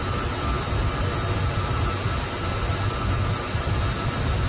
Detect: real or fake real